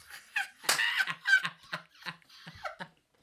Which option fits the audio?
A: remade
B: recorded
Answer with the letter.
B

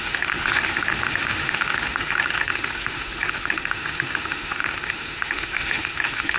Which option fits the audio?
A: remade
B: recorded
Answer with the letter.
A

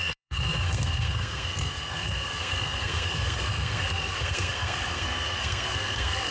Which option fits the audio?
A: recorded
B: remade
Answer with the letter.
B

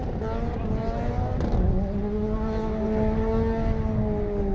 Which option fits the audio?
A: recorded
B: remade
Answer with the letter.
A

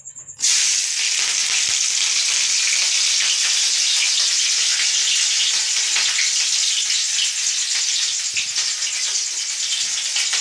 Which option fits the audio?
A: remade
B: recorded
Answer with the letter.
B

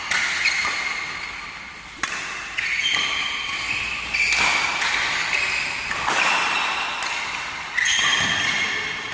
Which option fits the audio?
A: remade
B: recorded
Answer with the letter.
B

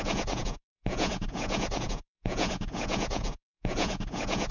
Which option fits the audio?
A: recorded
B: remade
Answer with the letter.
B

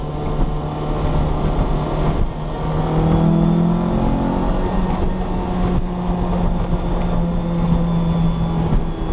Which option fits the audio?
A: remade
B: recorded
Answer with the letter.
B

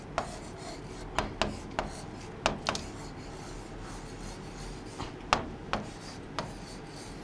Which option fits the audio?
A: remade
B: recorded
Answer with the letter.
B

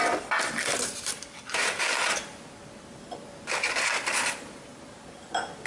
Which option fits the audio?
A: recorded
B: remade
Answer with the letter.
A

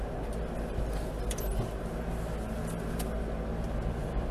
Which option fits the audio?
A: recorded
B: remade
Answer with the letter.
A